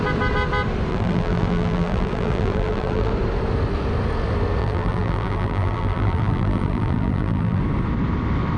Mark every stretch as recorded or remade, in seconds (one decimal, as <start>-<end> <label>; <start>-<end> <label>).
0.0-0.9 recorded; 0.9-3.1 remade; 3.1-4.6 recorded; 4.6-7.6 remade; 7.6-8.6 recorded